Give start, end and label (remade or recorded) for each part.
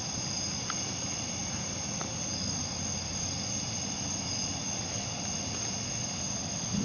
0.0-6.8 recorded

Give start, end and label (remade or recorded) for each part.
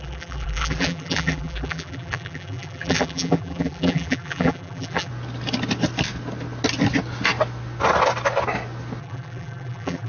0.0-5.1 remade; 5.1-9.0 recorded; 9.0-10.1 remade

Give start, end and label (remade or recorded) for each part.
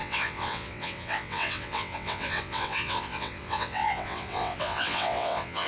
0.0-5.7 remade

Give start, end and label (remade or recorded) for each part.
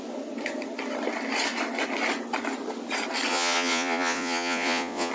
0.0-3.3 recorded; 3.3-5.1 remade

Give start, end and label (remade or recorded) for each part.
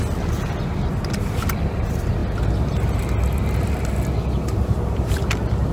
0.0-5.7 recorded